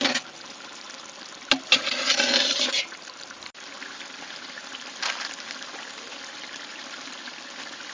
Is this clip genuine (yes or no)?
yes